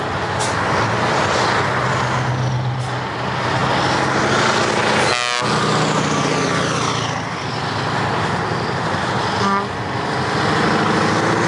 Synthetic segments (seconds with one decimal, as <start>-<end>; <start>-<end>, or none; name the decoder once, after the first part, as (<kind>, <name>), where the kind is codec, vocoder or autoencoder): none